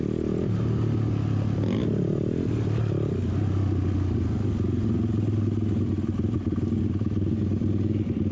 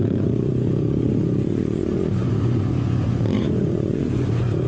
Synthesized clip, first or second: second